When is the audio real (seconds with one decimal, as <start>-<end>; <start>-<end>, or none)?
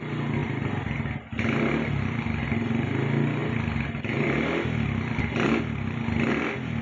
0.0-6.8